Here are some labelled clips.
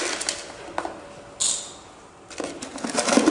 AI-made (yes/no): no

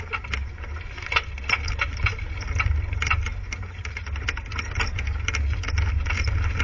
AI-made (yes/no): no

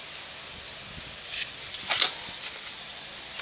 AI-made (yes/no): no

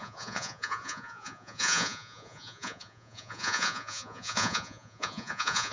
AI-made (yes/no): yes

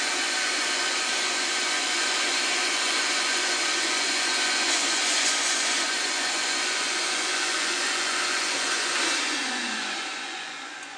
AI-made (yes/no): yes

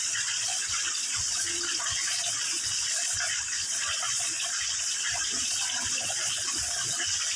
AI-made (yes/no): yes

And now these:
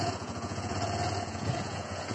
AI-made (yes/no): yes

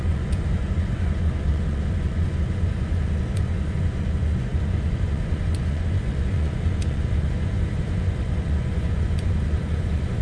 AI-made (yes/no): yes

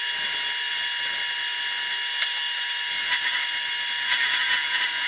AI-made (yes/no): no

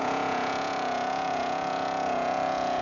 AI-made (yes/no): yes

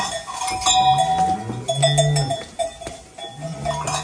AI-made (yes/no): no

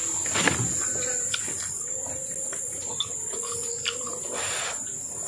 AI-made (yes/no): no